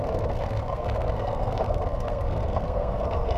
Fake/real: fake